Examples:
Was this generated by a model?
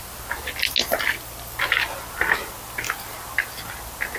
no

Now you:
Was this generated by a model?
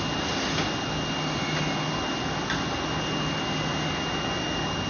no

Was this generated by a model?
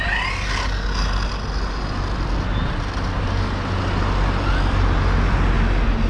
no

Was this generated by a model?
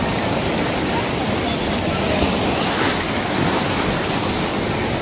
no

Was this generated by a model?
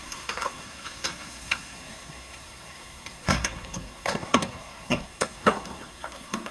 yes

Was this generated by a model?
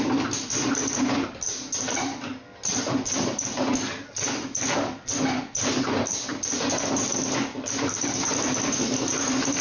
no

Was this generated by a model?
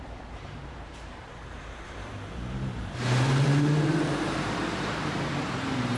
yes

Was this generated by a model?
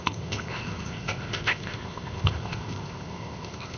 yes